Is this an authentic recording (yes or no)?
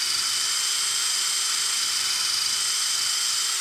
yes